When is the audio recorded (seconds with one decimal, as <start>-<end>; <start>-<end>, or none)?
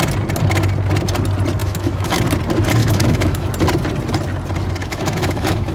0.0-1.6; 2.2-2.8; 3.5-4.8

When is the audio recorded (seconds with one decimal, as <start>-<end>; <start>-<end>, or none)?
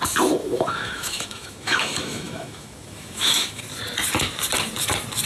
0.0-0.4; 3.6-5.3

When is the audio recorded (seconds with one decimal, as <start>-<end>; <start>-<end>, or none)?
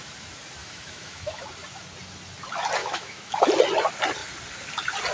0.0-0.6; 1.4-2.8; 3.4-5.1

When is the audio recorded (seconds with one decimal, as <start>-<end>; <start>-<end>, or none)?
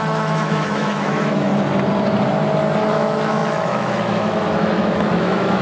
1.5-2.9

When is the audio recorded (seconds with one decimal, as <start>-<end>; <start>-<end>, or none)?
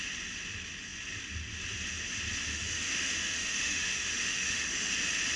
0.0-2.5; 4.9-5.4